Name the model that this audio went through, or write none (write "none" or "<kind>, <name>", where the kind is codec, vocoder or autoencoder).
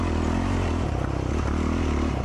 none